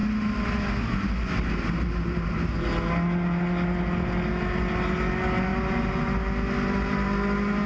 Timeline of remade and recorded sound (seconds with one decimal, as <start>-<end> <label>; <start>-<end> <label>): 0.0-7.7 recorded